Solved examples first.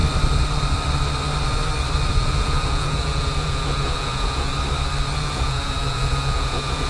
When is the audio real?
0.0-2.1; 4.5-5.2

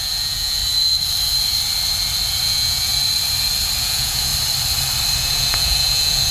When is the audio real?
0.6-2.4; 2.9-3.8; 4.3-5.2

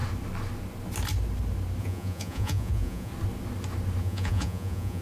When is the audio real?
0.0-1.8; 3.1-4.0

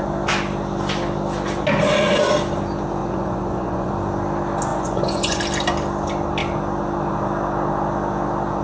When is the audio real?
0.0-3.0; 3.9-4.7; 5.4-8.6